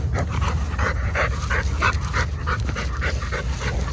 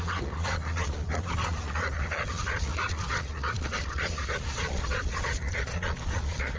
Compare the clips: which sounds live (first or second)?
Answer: first